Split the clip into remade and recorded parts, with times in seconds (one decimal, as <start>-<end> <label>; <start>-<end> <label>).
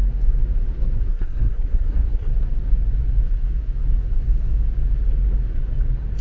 0.0-1.1 recorded; 1.1-2.3 remade; 2.3-6.2 recorded